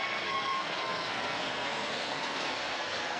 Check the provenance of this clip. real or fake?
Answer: fake